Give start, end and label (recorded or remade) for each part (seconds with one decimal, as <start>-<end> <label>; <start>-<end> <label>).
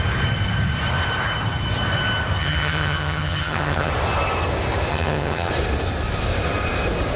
0.0-2.4 recorded; 2.4-3.9 remade; 3.9-4.9 recorded; 4.9-5.5 remade; 5.5-7.2 recorded